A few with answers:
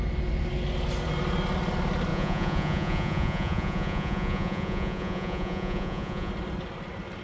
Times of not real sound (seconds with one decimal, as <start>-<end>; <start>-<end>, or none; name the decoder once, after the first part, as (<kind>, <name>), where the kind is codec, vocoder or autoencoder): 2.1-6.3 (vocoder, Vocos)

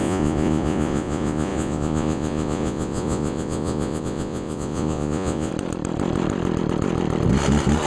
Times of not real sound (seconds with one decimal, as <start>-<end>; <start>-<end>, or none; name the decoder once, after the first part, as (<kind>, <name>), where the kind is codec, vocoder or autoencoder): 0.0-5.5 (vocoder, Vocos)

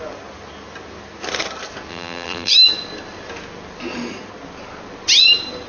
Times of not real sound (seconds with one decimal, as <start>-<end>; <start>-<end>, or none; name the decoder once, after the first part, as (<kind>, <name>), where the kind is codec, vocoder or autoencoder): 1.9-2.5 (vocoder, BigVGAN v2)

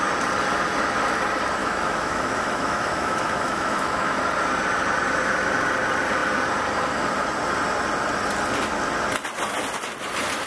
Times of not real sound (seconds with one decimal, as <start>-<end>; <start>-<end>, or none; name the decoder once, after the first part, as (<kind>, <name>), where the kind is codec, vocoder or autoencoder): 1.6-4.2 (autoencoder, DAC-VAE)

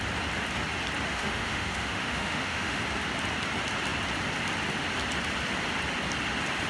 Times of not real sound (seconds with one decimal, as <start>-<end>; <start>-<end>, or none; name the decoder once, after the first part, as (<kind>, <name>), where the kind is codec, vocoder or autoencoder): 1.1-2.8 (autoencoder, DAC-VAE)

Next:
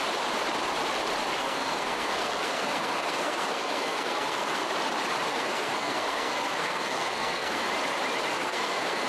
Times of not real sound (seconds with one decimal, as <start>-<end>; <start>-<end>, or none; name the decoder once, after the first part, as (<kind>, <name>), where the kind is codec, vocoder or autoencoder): 1.4-4.7 (codec, SNAC); 5.3-7.7; 8.3-9.1